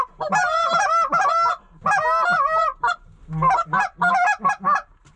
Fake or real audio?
real